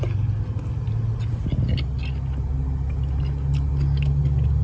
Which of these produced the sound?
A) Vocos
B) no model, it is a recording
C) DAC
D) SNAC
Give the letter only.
B